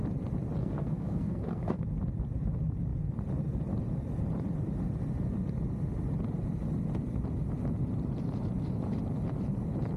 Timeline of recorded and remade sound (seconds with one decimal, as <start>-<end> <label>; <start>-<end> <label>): 0.0-0.6 recorded; 0.6-1.8 remade; 1.8-10.0 recorded